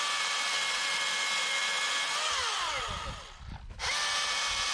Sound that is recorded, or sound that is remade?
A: recorded